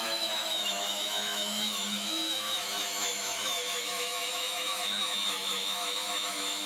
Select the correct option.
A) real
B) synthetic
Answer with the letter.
B